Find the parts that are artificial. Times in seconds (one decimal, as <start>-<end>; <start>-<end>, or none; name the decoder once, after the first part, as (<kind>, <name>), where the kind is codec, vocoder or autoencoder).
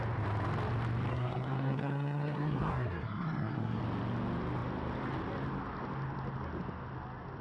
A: 1.1-3.8 (codec, SNAC)